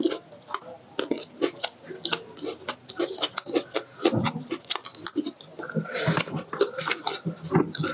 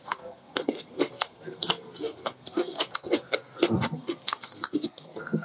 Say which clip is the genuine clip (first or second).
first